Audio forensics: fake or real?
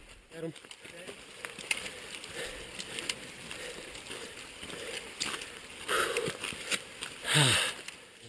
real